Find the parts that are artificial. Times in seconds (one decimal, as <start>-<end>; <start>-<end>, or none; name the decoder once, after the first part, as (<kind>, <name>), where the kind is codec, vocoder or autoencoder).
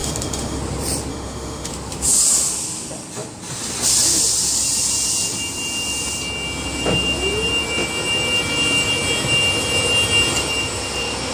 0.0-0.6 (autoencoder, DAC-VAE); 1.1-1.7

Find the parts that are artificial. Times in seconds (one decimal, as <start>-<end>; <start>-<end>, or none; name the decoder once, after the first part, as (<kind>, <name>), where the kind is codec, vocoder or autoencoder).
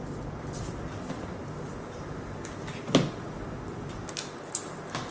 none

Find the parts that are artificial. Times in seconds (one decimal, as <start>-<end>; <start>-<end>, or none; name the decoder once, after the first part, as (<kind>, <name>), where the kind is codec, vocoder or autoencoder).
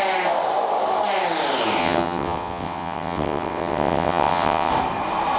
1.8-4.7 (vocoder, WaveNeXt)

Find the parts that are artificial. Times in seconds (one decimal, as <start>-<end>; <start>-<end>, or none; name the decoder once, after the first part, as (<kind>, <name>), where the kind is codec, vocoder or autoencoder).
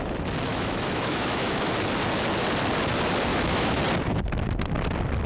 0.5-1.7 (autoencoder, DAC-VAE); 3.3-3.8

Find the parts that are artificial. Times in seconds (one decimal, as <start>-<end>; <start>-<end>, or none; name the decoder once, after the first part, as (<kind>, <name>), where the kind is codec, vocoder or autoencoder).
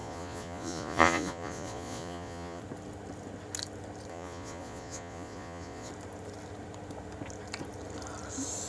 0.0-2.6 (vocoder, Vocos); 4.1-5.9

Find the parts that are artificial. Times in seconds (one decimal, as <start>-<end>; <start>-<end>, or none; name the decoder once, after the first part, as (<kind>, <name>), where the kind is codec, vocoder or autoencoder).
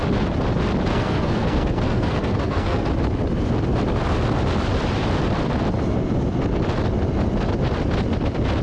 0.9-2.9 (codec, SNAC)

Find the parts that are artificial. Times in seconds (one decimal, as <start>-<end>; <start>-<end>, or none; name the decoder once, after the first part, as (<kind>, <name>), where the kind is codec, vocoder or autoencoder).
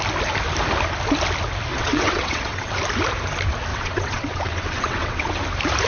1.7-2.7 (vocoder, WaveNeXt); 3.7-5.4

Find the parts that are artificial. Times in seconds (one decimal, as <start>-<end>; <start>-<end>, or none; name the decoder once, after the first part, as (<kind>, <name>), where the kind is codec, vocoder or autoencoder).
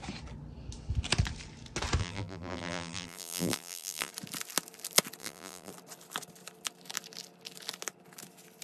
2.0-4.1 (vocoder, BigVGAN v2); 5.2-5.7